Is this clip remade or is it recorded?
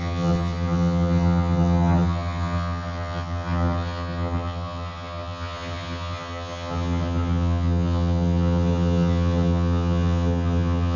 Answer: remade